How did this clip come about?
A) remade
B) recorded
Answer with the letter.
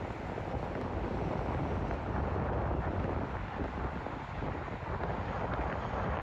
B